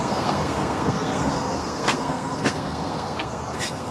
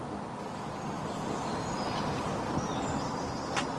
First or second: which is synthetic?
first